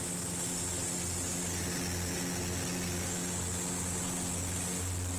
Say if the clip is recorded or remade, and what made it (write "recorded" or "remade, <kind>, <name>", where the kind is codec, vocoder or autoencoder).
recorded